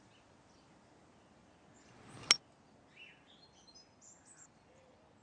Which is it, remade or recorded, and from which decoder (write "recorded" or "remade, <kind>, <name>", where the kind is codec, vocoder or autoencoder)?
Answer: recorded